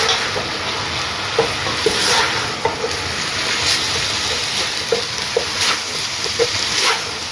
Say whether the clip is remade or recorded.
recorded